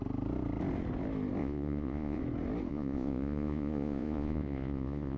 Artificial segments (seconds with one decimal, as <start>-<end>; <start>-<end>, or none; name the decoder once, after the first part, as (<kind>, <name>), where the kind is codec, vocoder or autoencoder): 1.4-2.2 (vocoder, Vocos); 2.7-5.2